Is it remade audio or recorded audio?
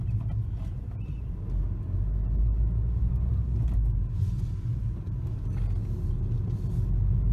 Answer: recorded